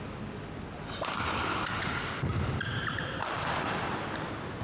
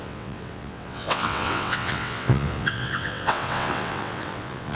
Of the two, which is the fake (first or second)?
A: second